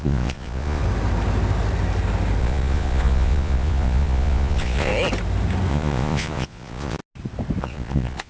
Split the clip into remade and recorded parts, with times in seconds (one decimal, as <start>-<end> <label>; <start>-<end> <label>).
0.0-0.8 remade; 0.8-2.4 recorded; 2.4-4.9 remade; 4.9-5.7 recorded; 5.7-7.0 remade; 7.0-7.6 recorded; 7.6-8.3 remade

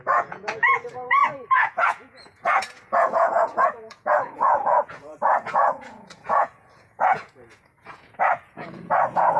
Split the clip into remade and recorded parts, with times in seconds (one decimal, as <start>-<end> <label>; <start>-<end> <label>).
0.0-9.4 remade

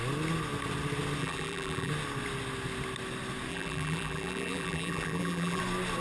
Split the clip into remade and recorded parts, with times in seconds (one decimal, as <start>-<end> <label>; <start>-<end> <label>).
0.0-1.2 recorded; 1.2-1.9 remade; 1.9-3.5 recorded; 3.5-5.6 remade; 5.6-6.0 recorded

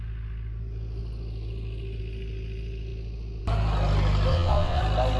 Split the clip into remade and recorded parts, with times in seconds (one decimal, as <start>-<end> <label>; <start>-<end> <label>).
0.0-4.3 recorded; 4.3-4.8 remade; 4.8-5.2 recorded

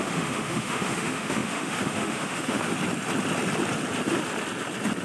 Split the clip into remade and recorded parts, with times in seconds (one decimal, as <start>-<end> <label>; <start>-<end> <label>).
0.0-2.7 remade; 2.7-5.0 recorded

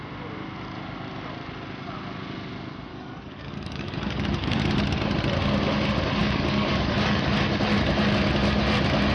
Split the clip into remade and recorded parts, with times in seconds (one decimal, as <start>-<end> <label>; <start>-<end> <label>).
0.0-2.9 recorded; 2.9-4.6 remade; 4.6-6.2 recorded; 6.2-7.2 remade; 7.2-9.1 recorded

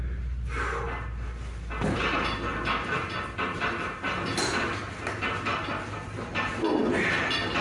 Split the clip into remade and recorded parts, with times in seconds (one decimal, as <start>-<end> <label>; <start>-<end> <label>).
0.0-7.6 recorded